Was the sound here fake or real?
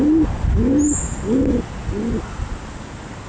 real